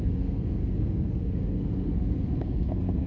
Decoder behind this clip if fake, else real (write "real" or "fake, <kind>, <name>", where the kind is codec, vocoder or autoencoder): fake, codec, SNAC